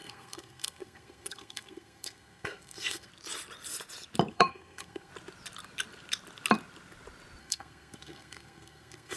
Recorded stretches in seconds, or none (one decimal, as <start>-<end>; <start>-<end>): 3.1-4.3; 5.1-7.4